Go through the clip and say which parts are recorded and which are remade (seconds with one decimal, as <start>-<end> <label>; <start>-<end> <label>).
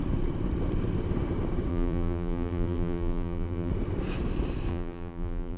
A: 0.0-1.7 recorded; 1.7-3.7 remade; 3.7-4.7 recorded; 4.7-5.6 remade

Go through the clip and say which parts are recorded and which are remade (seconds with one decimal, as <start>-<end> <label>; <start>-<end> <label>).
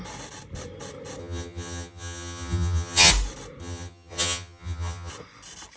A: 0.0-1.2 recorded; 1.2-3.1 remade; 3.1-3.6 recorded; 3.6-5.1 remade; 5.1-5.8 recorded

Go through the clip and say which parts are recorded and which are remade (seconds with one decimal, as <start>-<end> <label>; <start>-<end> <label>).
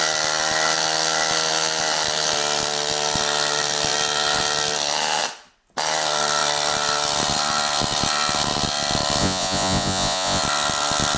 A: 0.0-9.2 recorded; 9.2-10.4 remade; 10.4-11.2 recorded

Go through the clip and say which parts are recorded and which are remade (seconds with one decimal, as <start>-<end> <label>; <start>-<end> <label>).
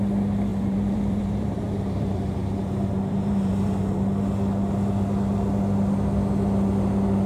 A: 0.0-0.5 recorded; 0.5-3.7 remade; 3.7-7.3 recorded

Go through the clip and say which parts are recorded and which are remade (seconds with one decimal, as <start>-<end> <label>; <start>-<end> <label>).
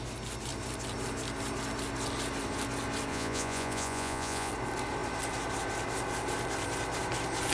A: 0.0-3.1 recorded; 3.1-4.5 remade; 4.5-7.5 recorded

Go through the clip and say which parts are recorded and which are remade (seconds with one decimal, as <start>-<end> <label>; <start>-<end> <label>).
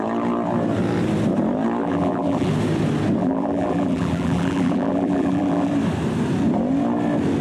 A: 0.0-1.8 recorded; 1.8-2.5 remade; 2.5-3.2 recorded; 3.2-5.7 remade; 5.7-7.4 recorded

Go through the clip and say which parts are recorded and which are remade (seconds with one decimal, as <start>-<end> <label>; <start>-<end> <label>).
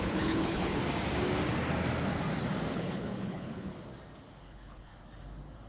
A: 0.0-0.8 remade; 0.8-2.7 recorded; 2.7-3.7 remade; 3.7-4.4 recorded; 4.4-4.9 remade; 4.9-5.7 recorded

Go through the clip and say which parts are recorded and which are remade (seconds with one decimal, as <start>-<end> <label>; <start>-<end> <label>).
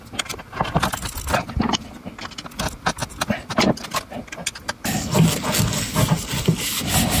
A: 0.0-7.2 recorded